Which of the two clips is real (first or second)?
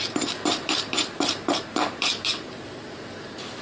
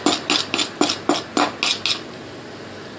second